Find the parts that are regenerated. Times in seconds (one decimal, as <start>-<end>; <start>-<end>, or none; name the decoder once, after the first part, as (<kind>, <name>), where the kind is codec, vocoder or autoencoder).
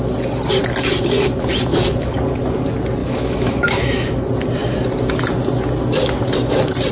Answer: 3.0-4.1 (autoencoder, DAC-VAE)